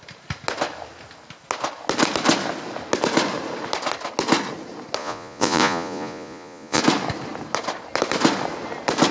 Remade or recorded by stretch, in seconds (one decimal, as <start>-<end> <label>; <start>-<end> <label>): 0.0-5.0 recorded; 5.0-6.8 remade; 6.8-9.1 recorded

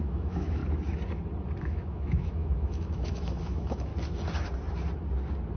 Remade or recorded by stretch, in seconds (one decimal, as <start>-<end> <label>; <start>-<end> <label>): 0.0-0.6 remade; 0.6-1.6 recorded; 1.6-3.9 remade; 3.9-5.6 recorded

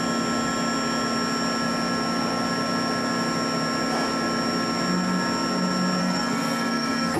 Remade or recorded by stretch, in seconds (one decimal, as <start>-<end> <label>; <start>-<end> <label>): 0.0-6.0 recorded; 6.0-7.2 remade